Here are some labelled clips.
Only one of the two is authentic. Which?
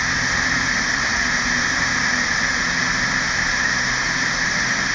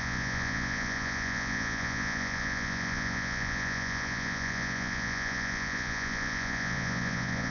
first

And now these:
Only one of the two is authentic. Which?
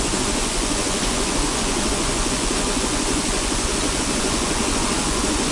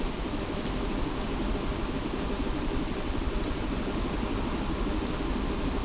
second